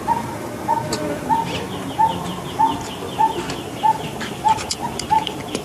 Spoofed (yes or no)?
no